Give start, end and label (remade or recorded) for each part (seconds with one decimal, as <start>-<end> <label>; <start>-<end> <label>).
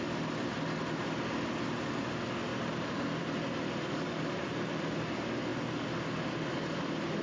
0.0-7.2 recorded